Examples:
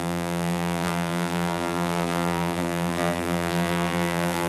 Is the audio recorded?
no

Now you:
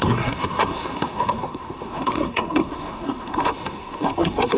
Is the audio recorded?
no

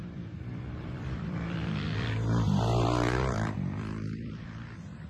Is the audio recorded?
no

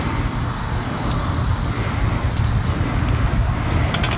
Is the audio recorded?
yes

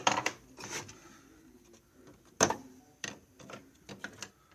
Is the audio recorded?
yes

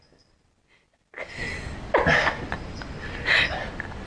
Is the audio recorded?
yes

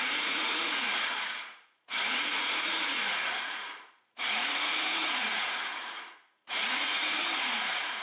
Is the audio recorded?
no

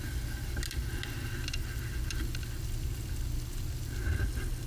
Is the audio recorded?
yes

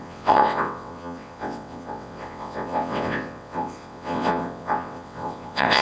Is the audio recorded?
no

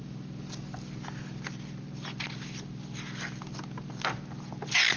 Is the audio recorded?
yes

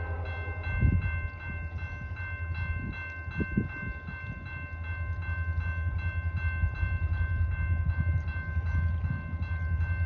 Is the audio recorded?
yes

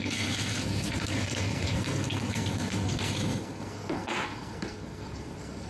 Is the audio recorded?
no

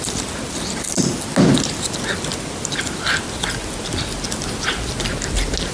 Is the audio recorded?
yes